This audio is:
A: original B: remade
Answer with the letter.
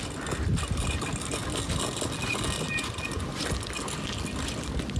A